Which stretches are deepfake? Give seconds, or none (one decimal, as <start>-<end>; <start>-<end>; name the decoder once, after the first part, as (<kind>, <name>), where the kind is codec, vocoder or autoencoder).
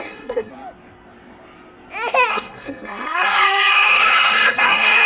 0.0-0.5 (codec, SNAC); 2.3-5.1